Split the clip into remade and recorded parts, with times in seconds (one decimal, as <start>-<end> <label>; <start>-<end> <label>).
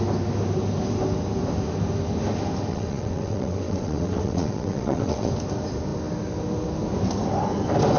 0.0-2.7 recorded; 2.7-5.3 remade; 5.3-8.0 recorded